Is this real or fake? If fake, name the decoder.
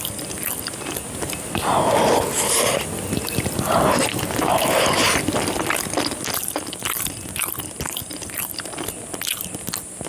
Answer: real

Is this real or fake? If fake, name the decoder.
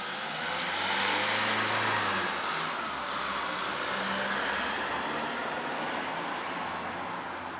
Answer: real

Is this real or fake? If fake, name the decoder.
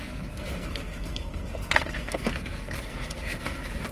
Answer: fake, codec, SNAC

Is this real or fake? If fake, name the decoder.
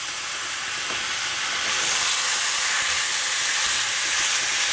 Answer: real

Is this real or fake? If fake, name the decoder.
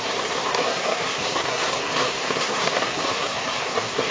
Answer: fake, codec, SNAC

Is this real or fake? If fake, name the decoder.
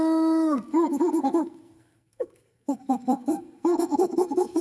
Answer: fake, codec, SNAC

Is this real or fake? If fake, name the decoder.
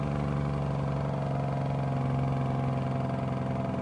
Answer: real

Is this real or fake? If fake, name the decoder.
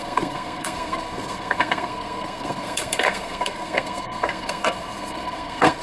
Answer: fake, codec, SNAC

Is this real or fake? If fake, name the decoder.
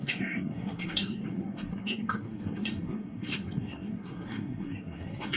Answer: fake, codec, SNAC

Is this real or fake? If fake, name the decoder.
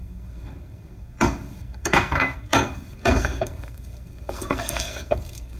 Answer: fake, codec, SNAC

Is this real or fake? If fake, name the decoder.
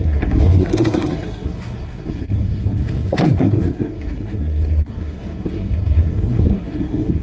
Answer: fake, codec, SNAC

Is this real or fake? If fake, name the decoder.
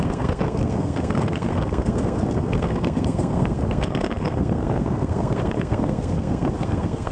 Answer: fake, codec, SNAC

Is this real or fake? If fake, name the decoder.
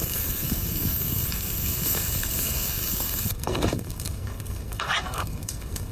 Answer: fake, codec, SNAC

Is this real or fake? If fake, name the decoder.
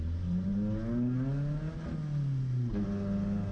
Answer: real